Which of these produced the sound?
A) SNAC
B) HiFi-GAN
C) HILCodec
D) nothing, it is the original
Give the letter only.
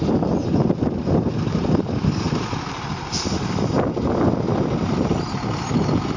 D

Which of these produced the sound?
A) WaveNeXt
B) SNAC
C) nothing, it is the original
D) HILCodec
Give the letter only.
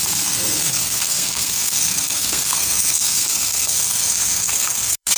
B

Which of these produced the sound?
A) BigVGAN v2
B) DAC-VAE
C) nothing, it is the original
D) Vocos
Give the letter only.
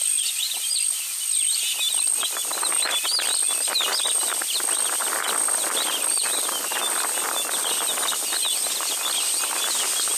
C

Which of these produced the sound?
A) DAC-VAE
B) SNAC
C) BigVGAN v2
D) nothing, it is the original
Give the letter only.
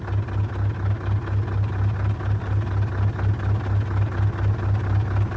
D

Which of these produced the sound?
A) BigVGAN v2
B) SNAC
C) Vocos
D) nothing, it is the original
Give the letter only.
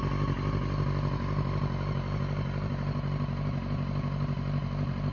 D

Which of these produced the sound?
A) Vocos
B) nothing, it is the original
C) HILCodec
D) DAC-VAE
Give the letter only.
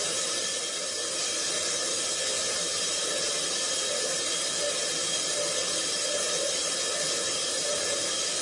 B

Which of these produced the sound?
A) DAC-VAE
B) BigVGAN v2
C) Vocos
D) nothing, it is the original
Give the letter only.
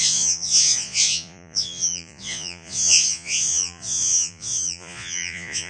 C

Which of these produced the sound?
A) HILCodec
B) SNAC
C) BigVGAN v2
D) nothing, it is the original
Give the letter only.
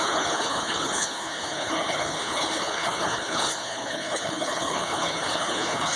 A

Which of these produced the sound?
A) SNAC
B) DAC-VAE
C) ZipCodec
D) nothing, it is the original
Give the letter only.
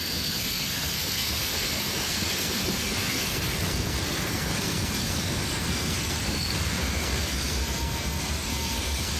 A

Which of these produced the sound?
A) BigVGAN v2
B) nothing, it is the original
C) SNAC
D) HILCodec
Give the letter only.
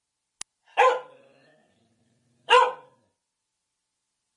B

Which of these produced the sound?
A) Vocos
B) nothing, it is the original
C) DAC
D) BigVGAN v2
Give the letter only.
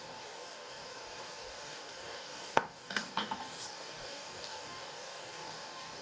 C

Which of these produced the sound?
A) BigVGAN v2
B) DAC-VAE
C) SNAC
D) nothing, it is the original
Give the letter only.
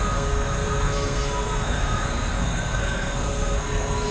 C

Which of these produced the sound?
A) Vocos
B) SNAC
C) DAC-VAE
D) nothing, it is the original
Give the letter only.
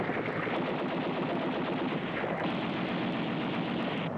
D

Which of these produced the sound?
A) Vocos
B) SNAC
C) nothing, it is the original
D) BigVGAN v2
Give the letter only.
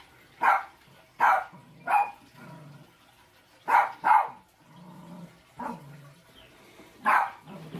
C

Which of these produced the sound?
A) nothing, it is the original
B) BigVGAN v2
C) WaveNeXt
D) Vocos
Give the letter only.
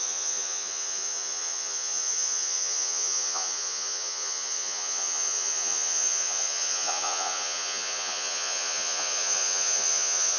D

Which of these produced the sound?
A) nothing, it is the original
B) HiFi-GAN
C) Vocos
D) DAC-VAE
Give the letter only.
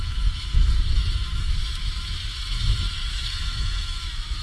D